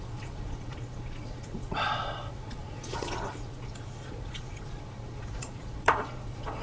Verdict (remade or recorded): remade